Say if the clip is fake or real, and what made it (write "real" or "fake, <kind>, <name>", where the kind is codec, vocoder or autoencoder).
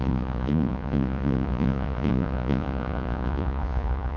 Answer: fake, vocoder, Vocos